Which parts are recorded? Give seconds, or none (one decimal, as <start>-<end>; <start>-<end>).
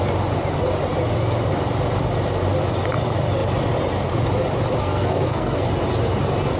0.0-4.8; 5.7-6.6